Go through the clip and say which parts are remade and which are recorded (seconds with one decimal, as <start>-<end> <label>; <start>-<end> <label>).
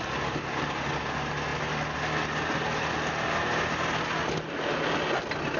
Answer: 0.0-5.6 recorded